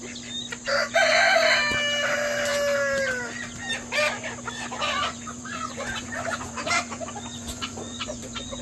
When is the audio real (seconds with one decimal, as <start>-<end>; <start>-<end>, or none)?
0.0-0.6; 1.4-4.8

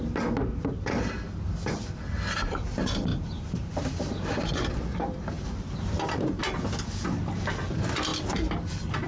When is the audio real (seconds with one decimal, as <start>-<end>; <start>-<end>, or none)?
0.0-3.1; 6.4-9.1

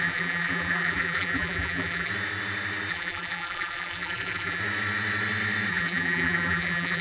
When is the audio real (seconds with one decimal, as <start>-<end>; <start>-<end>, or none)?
2.1-2.9; 4.6-5.7

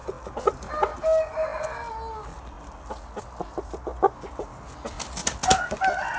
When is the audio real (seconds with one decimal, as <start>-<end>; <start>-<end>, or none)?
0.0-6.2

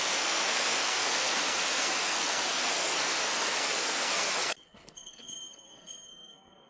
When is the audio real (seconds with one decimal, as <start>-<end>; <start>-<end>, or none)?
none